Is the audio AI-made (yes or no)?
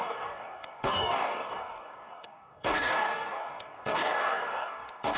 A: yes